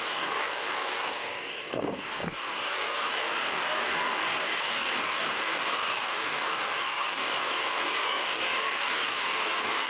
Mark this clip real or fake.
fake